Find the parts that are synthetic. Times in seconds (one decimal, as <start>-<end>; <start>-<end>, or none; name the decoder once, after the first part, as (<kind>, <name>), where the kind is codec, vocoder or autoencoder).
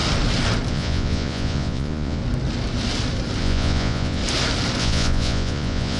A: 0.7-2.2 (vocoder, Vocos); 3.4-4.2; 4.8-6.0